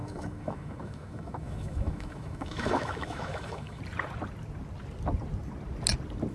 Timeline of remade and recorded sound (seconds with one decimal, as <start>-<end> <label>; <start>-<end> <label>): 0.0-3.8 remade; 3.8-6.3 recorded